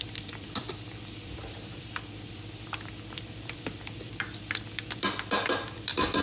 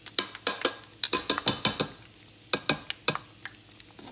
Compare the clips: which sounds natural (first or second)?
second